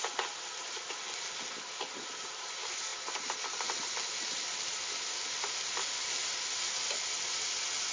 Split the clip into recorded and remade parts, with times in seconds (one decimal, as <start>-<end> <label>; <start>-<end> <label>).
0.0-7.9 recorded